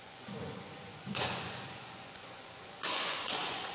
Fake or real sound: fake